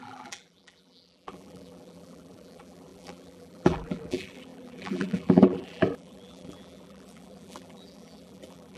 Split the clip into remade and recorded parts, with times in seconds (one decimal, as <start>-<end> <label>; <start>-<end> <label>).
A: 0.0-8.8 remade